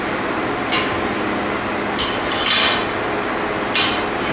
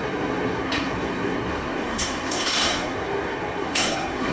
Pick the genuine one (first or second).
first